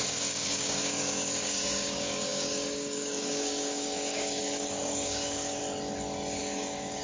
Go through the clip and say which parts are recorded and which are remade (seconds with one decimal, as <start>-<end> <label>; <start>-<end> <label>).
0.0-5.6 remade; 5.6-6.4 recorded; 6.4-7.0 remade